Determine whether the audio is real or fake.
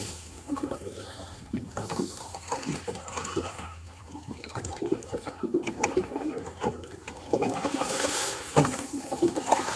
fake